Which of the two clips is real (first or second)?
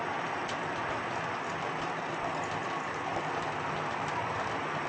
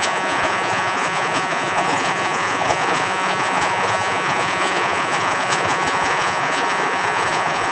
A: first